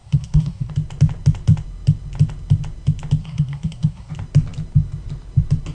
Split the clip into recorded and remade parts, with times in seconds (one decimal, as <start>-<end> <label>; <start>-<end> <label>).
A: 0.0-0.7 remade; 0.7-3.2 recorded; 3.2-4.1 remade; 4.1-5.7 recorded